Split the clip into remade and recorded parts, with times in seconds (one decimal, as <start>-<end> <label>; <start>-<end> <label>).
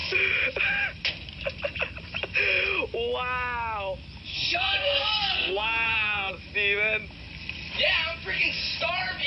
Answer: 0.0-4.3 recorded; 4.3-6.3 remade; 6.3-9.3 recorded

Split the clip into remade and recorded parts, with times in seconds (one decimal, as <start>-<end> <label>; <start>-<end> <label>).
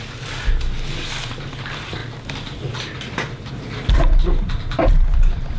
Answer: 0.0-5.6 recorded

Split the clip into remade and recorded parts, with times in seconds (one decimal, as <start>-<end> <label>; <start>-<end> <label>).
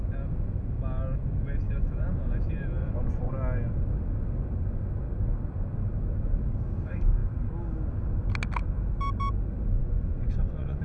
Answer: 0.0-2.8 recorded; 2.8-3.3 remade; 3.3-9.8 recorded; 9.8-10.8 remade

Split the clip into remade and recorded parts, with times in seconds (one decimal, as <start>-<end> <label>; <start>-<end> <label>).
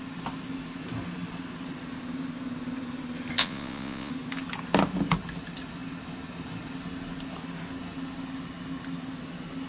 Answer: 0.0-3.4 recorded; 3.4-4.1 remade; 4.1-9.7 recorded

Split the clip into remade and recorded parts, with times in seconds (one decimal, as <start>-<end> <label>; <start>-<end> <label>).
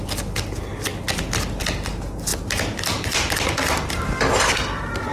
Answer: 0.0-5.1 recorded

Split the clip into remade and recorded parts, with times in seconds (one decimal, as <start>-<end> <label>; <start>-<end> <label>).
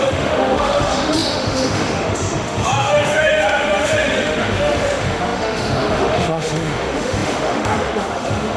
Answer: 0.0-8.6 remade